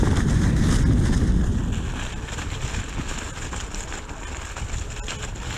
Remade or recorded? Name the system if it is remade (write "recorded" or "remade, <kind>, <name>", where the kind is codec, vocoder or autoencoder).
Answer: recorded